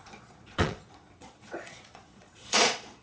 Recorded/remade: remade